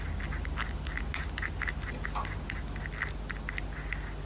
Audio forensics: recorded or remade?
recorded